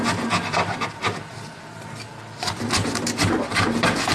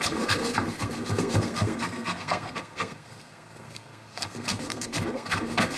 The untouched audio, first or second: first